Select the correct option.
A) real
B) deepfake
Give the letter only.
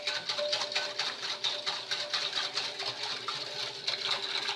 A